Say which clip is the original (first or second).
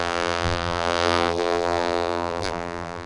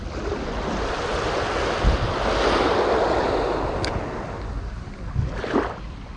second